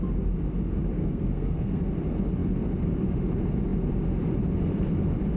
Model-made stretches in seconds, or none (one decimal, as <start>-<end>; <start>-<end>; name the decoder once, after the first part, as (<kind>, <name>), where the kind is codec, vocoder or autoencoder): 0.9-1.8 (codec, SNAC)